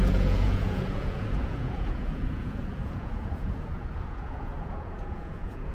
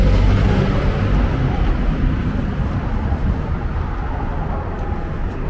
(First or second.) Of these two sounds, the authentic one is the second